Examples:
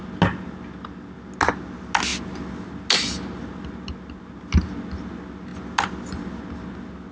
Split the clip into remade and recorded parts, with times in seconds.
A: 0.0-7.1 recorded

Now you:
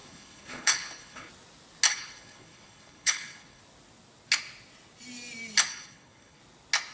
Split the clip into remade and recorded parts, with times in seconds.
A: 0.0-1.3 remade; 1.3-1.9 recorded; 1.9-3.6 remade; 3.6-5.7 recorded; 5.7-6.4 remade; 6.4-6.9 recorded

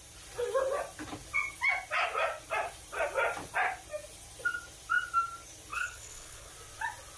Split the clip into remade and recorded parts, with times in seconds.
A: 0.0-5.7 recorded; 5.7-6.5 remade; 6.5-7.2 recorded